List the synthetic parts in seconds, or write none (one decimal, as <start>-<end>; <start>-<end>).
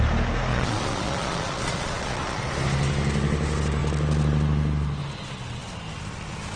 0.5-2.4